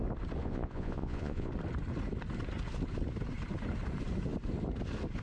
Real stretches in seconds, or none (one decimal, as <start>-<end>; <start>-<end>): 0.0-0.4; 1.5-5.2